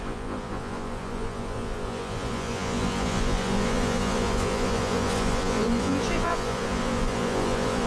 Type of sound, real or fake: fake